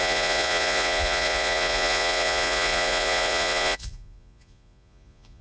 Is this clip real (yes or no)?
no